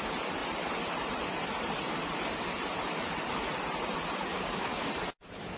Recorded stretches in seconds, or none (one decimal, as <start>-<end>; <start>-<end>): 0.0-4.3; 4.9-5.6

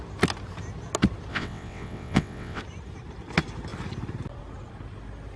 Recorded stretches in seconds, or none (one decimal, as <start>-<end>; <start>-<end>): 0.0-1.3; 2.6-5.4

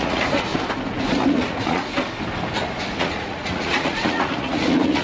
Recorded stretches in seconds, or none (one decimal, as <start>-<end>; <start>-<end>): 0.5-1.1; 1.9-3.0

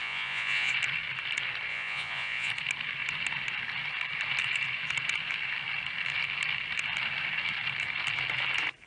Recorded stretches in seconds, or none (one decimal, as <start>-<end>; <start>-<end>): 0.7-1.7; 2.5-8.9